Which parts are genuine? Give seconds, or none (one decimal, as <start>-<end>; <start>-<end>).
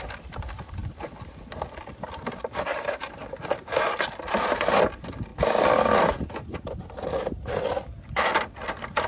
0.0-9.1